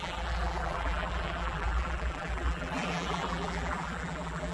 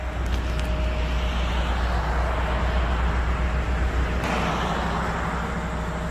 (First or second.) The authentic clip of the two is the second